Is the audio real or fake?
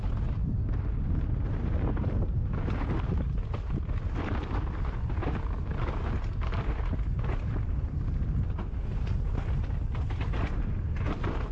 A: real